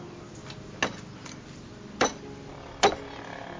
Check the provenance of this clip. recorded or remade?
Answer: recorded